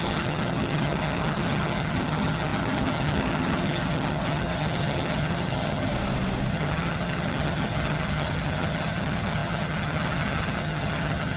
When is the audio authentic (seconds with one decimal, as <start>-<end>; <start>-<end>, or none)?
5.9-6.5